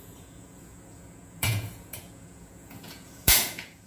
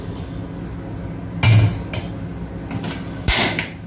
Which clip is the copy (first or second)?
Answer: first